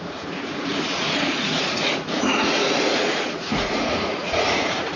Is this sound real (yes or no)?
no